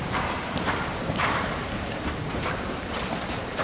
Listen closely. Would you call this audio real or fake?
fake